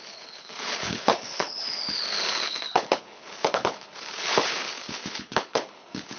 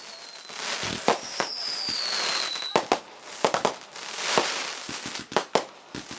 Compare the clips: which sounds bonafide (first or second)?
second